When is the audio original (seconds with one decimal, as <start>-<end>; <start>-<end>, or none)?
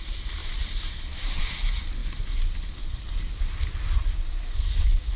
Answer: 0.0-0.4; 1.4-5.2